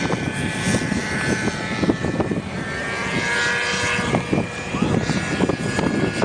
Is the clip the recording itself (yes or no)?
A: yes